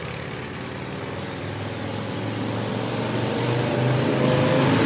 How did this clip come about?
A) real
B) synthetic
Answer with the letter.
A